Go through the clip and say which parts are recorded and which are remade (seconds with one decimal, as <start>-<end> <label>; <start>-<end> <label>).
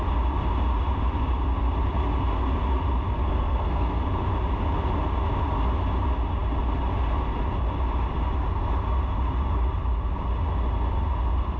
0.0-3.2 recorded; 3.2-4.0 remade; 4.0-11.6 recorded